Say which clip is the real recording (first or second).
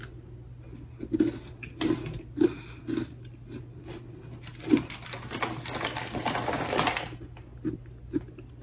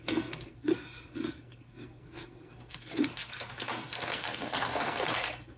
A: first